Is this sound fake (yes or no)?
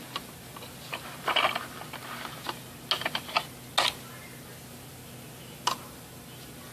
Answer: no